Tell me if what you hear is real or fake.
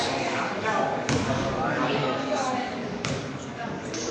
fake